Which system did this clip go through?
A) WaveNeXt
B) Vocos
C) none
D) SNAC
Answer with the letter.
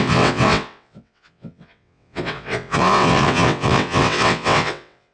A